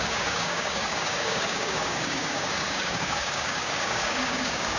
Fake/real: fake